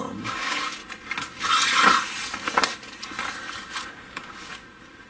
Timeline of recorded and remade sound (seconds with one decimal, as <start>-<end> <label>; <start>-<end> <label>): 0.0-0.8 remade; 0.8-3.9 recorded; 3.9-4.5 remade; 4.5-5.1 recorded